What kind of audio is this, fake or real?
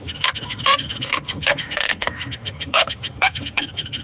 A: fake